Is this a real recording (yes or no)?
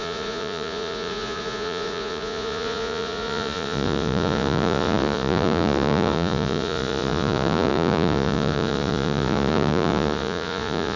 no